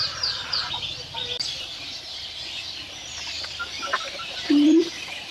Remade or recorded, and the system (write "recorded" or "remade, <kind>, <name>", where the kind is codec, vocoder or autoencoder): remade, vocoder, BigVGAN v2